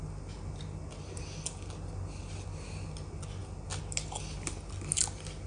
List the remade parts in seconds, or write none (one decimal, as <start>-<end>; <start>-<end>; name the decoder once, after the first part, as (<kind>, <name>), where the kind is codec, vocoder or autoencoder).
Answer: none